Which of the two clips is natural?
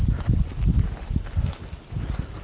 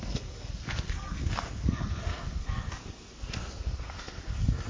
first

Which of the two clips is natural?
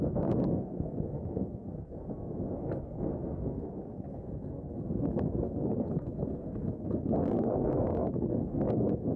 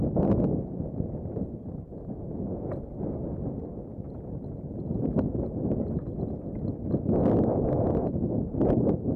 second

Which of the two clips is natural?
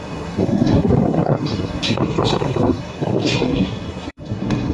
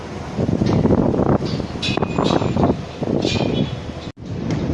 second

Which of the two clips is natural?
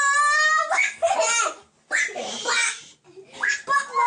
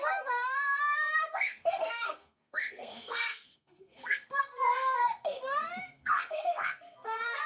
first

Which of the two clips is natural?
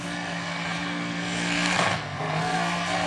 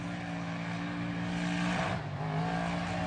second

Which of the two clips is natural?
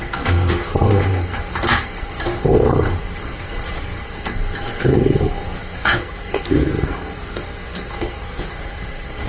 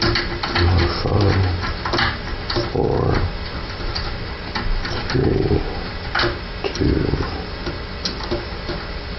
second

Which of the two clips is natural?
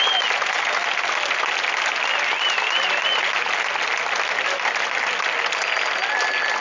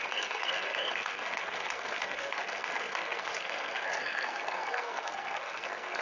first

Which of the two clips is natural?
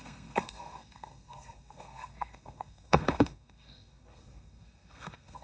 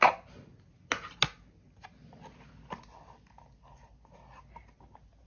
second